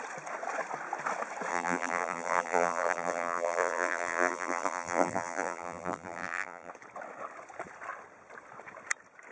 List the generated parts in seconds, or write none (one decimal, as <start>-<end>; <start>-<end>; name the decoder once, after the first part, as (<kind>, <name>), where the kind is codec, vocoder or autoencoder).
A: 1.5-6.7 (vocoder, BigVGAN v2)